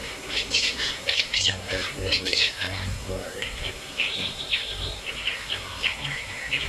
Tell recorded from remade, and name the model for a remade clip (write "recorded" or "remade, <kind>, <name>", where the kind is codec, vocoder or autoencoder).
remade, codec, SNAC